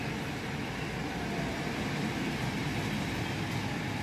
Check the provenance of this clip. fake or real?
real